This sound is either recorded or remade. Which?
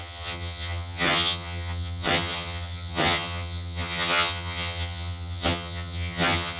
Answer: remade